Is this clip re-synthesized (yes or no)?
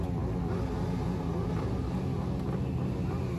no